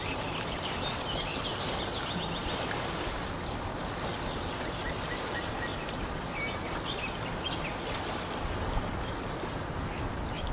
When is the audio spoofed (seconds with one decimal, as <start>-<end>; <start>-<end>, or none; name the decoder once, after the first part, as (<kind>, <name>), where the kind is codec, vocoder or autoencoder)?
none